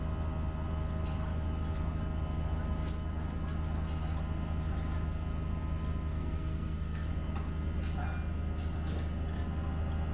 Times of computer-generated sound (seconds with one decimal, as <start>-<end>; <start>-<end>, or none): 6.1-7.1